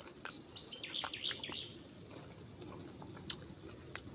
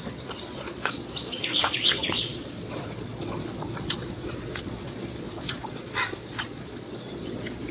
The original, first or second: first